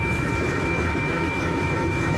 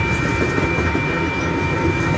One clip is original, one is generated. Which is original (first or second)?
second